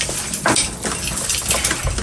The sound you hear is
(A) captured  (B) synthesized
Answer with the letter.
A